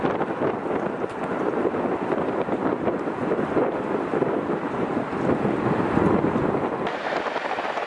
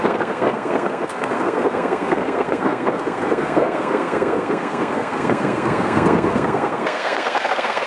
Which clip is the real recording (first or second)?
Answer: first